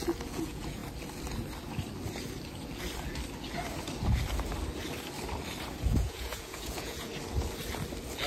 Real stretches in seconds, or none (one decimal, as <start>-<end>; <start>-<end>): 0.8-5.8; 7.1-8.3